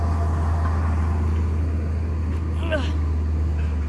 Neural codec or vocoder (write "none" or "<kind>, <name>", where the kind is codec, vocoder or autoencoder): none